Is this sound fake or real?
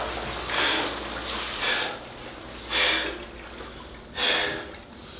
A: real